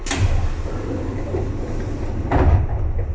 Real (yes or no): yes